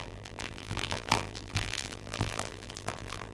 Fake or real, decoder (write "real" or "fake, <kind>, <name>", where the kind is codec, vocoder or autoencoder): fake, vocoder, BigVGAN v2